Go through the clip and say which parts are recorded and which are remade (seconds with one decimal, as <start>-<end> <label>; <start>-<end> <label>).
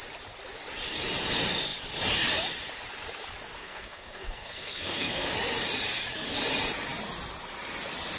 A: 0.0-3.6 recorded; 3.6-5.3 remade; 5.3-8.2 recorded